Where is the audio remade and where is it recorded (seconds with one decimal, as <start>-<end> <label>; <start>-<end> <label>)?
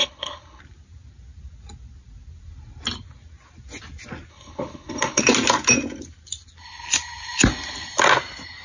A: 0.0-0.6 remade; 0.6-4.3 recorded; 4.3-5.2 remade; 5.2-8.6 recorded